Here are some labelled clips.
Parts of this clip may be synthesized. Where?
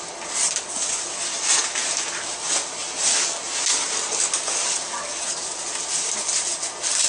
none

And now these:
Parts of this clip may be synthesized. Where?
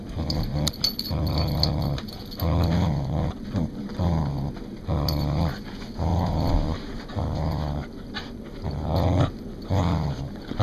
6.1-7.0 (vocoder, BigVGAN v2)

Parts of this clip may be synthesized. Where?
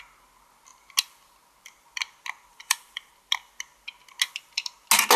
2.5-3.1 (vocoder, BigVGAN v2)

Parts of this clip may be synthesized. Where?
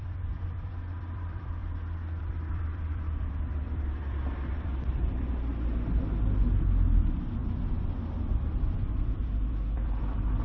0.0-1.6 (vocoder, BigVGAN v2); 2.2-7.4; 8.9-10.4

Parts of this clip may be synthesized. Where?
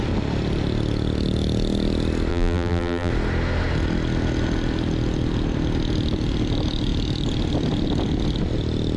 2.3-3.1 (vocoder, BigVGAN v2)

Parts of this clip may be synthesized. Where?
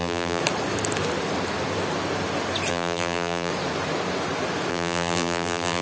0.0-0.4 (vocoder, BigVGAN v2); 2.7-3.5; 4.7-5.8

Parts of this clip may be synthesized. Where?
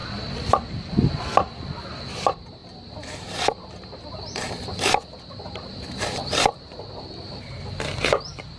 1.9-8.6 (vocoder, BigVGAN v2)